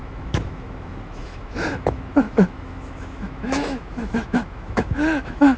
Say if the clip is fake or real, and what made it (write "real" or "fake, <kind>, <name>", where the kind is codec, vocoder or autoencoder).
fake, autoencoder, DAC-VAE